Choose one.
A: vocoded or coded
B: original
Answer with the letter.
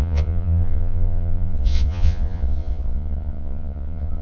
A